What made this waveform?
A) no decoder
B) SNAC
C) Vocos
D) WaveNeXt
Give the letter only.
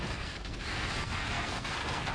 B